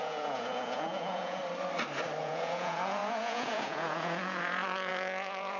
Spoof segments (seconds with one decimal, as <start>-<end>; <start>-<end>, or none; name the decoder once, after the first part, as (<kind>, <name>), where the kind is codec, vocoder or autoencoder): 0.0-1.4 (vocoder, Vocos); 2.2-5.6